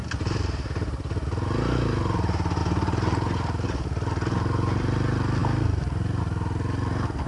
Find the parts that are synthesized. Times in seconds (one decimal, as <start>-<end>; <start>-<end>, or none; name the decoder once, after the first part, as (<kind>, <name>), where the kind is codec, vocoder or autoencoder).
none